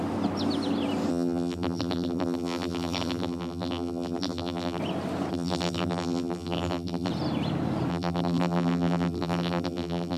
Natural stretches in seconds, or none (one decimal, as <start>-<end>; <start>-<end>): 0.0-1.1; 4.8-5.3; 7.1-7.9

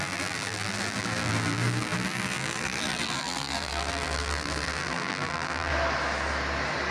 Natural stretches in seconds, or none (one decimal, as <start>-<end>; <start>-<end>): 5.7-6.9

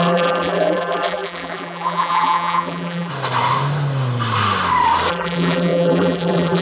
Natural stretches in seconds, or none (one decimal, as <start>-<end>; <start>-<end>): 3.1-5.1